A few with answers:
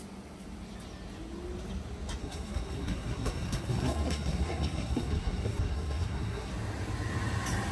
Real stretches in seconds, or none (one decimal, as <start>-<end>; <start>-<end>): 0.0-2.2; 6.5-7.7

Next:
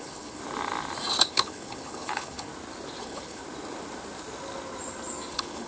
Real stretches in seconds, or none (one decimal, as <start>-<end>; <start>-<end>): 0.4-1.2; 2.5-3.0; 3.4-5.3

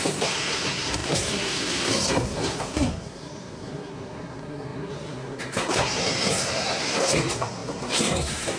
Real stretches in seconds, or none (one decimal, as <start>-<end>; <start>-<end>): none

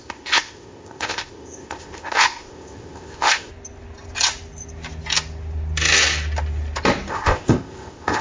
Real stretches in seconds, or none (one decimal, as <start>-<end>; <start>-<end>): 3.5-7.1

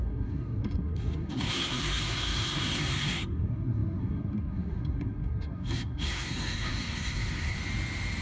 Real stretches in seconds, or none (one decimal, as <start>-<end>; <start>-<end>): 7.6-8.2